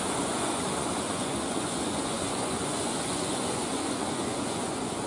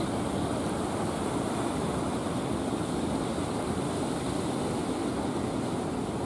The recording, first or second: second